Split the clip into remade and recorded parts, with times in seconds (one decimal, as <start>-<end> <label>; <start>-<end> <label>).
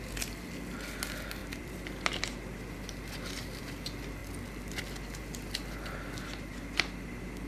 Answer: 0.0-1.4 recorded; 1.4-3.6 remade; 3.6-4.2 recorded; 4.2-4.8 remade; 4.8-7.5 recorded